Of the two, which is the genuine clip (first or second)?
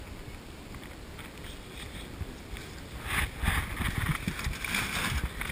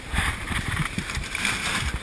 first